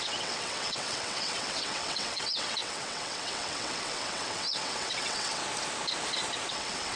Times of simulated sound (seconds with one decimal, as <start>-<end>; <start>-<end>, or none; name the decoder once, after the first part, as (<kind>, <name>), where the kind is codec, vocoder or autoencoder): 0.0-5.4 (vocoder, WaveNeXt); 6.5-7.0